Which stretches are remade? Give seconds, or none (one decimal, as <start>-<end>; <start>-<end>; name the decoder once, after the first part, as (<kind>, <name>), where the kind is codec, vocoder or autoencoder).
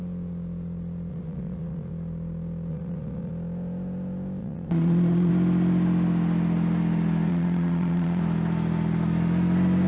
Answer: 1.1-1.9 (vocoder, Vocos); 2.7-3.3; 4.4-5.3; 7.3-8.2